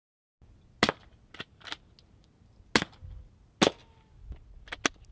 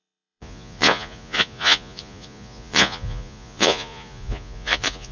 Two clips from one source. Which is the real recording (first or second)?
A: first